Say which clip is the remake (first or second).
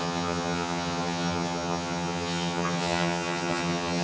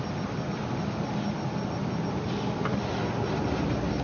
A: first